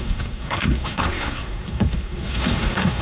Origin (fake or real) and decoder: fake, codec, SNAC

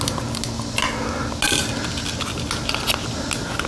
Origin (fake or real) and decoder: real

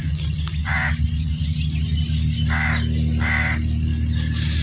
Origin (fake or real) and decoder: real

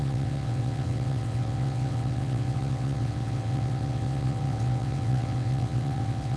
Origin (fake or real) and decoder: fake, vocoder, WaveNeXt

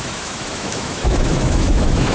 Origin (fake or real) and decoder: fake, autoencoder, DAC-VAE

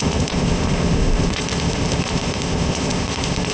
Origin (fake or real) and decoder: fake, codec, ZipCodec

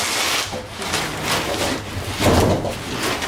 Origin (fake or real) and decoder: real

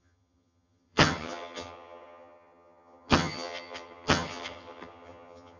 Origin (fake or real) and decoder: fake, vocoder, HiFi-GAN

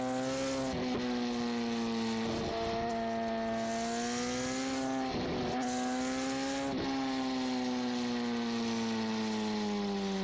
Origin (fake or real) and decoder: real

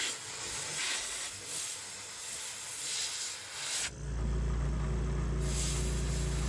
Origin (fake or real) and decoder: real